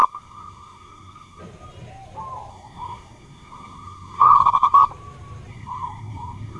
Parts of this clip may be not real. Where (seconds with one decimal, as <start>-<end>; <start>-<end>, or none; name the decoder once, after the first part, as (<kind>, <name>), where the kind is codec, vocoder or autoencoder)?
0.0-1.4 (codec, SNAC); 2.5-4.9; 5.5-6.6